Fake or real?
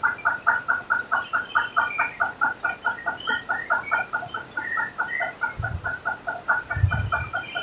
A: real